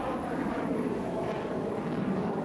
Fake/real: fake